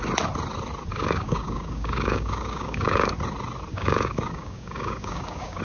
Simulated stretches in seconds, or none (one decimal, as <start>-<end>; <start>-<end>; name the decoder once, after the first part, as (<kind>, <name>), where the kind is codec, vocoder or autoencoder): 0.9-3.1 (codec, DAC); 3.7-5.6